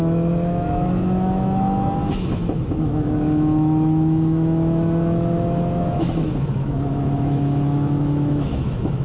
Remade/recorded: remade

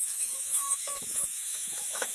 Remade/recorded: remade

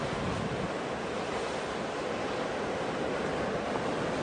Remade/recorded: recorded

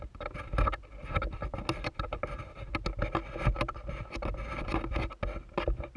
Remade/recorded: recorded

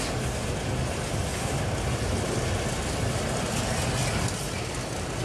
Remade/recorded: recorded